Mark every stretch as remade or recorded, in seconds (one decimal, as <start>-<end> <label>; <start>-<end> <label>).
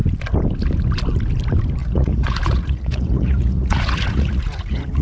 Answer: 0.0-1.8 recorded; 1.8-5.0 remade